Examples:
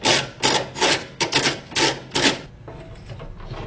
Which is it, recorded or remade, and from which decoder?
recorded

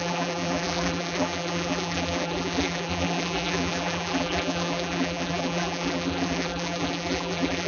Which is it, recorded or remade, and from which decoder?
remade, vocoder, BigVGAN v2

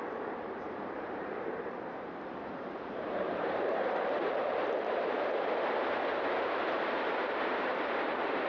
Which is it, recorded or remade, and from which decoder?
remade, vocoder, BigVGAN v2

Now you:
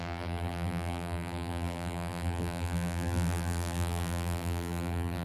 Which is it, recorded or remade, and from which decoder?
remade, vocoder, BigVGAN v2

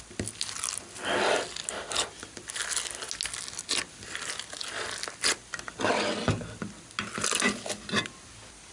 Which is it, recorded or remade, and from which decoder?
recorded